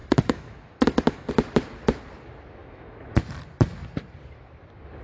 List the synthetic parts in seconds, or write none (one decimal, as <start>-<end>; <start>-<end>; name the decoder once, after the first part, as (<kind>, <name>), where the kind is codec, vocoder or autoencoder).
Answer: 0.0-1.3 (autoencoder, DAC-VAE); 2.6-3.1